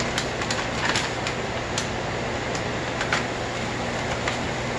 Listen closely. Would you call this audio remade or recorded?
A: recorded